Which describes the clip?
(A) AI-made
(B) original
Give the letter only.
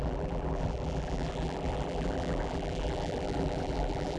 A